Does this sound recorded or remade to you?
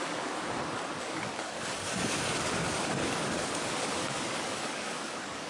remade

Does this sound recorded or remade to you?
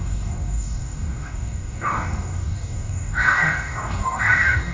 remade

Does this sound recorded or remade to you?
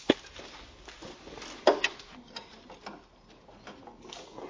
recorded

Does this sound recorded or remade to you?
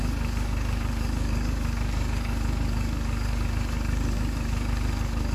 remade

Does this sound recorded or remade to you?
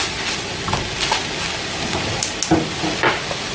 recorded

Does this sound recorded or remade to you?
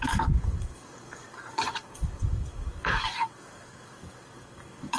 remade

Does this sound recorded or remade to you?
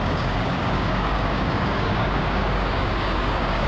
remade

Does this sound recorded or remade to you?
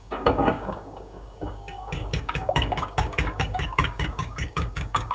remade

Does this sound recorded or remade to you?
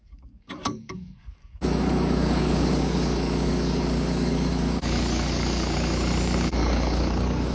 remade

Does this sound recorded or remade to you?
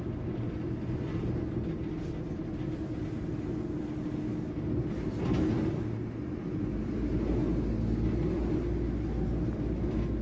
recorded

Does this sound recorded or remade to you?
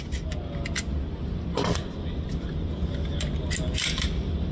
recorded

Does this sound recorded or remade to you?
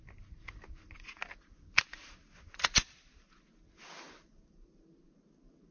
recorded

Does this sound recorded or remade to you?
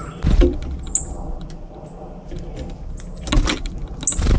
recorded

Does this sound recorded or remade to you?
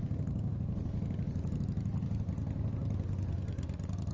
recorded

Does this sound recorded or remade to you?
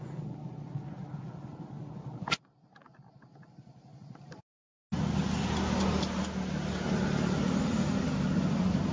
recorded